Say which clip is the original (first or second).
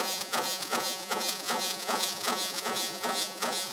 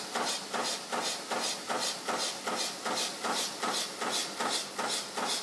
second